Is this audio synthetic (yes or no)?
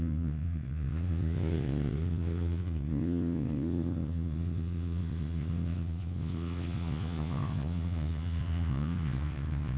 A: yes